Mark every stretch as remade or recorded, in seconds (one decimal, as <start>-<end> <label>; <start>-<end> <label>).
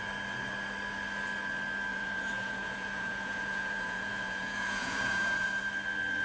0.0-1.9 recorded; 1.9-5.6 remade; 5.6-6.2 recorded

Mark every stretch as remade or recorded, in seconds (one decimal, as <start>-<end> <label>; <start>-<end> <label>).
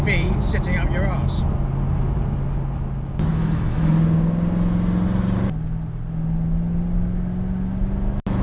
0.0-3.3 recorded; 3.3-3.9 remade; 3.9-8.4 recorded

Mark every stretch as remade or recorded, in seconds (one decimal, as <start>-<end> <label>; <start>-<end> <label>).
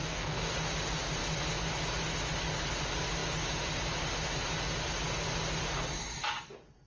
0.0-0.5 remade; 0.5-6.9 recorded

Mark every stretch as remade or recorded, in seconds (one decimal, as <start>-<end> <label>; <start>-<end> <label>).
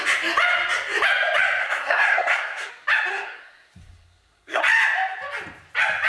0.0-1.6 recorded; 1.6-2.7 remade; 2.7-3.1 recorded; 3.1-4.6 remade; 4.6-6.1 recorded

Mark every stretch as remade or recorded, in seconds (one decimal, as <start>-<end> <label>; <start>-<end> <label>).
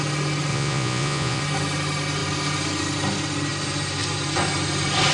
0.0-0.5 recorded; 0.5-1.4 remade; 1.4-5.1 recorded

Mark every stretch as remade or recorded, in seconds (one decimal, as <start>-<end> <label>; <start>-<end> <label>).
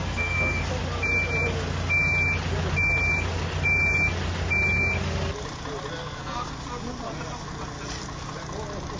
0.0-0.6 remade; 0.6-6.0 recorded; 6.0-6.5 remade; 6.5-9.0 recorded